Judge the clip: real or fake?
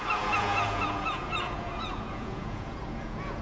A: fake